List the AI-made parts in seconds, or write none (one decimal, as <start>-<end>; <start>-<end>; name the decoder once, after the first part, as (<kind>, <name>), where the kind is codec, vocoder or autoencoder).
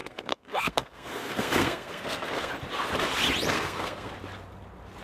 0.0-2.5 (codec, SNAC); 3.5-4.1